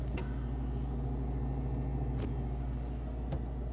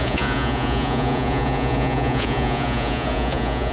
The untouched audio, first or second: first